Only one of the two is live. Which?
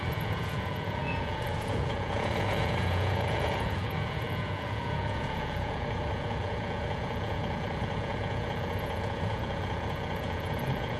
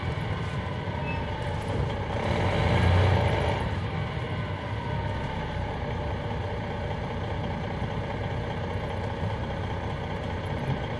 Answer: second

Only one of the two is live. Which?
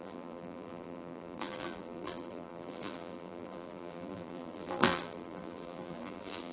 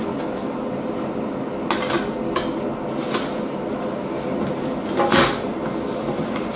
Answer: second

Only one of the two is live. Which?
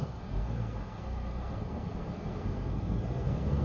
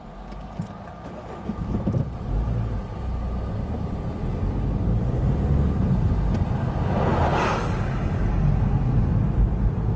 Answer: second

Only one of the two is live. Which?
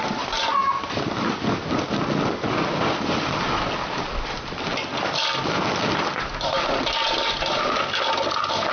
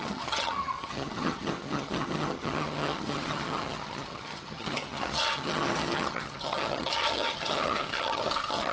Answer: first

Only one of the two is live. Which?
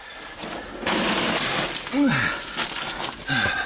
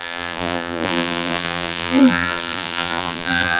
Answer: first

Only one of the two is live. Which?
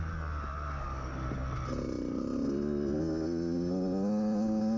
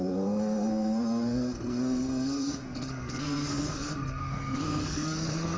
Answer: first